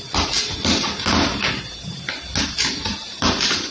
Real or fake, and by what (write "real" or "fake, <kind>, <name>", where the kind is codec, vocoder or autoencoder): real